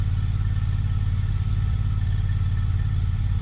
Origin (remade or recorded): recorded